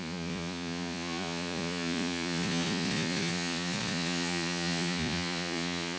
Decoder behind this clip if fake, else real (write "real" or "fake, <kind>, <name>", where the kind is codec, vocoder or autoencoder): fake, vocoder, Vocos